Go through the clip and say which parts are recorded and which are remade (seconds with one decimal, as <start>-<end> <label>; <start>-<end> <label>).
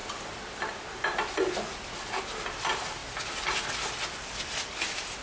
0.0-5.2 recorded